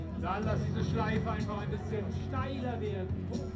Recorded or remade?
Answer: remade